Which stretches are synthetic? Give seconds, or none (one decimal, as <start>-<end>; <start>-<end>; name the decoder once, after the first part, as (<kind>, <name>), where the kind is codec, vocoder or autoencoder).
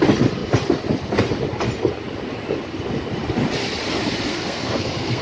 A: 4.3-5.2 (codec, SNAC)